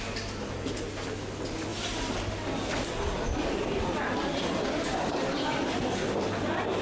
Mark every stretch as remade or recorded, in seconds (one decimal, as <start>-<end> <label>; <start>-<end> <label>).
0.0-6.8 recorded